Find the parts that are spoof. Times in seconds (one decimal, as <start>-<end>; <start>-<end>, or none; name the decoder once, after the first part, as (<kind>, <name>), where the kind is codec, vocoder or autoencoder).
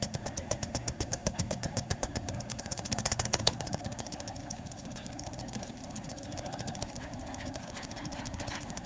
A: 0.0-8.9 (codec, SNAC)